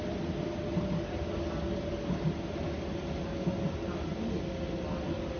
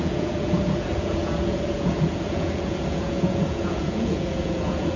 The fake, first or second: second